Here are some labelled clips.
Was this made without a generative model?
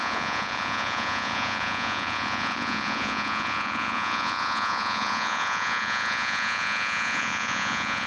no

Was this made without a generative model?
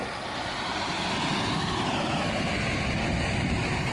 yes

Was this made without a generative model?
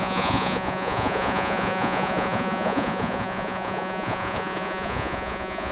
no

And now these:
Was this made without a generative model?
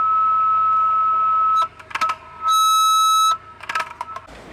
yes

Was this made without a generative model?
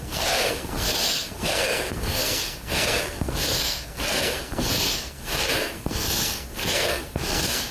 no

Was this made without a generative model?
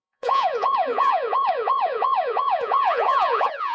no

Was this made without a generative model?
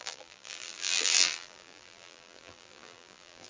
no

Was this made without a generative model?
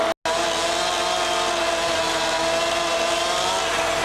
yes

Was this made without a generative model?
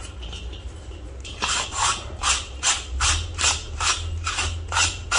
yes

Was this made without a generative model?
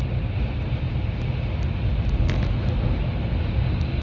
yes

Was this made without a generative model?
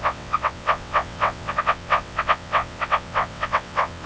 no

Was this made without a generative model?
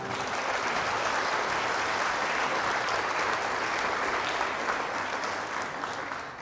yes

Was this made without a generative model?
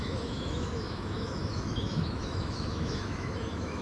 no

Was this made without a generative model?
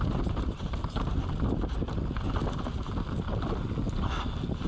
yes